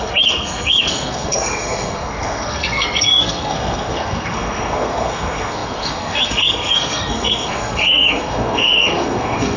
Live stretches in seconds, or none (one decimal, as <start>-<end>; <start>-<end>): none